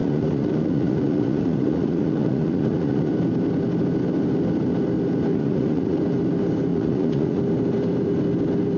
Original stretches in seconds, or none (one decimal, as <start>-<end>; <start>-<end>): 3.1-5.3; 6.0-6.7; 7.4-8.8